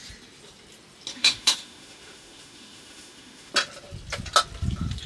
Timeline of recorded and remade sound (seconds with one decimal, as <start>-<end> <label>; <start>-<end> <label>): 0.0-1.1 recorded; 1.1-3.5 remade; 3.5-5.1 recorded